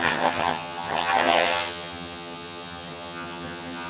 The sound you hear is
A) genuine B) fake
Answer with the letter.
B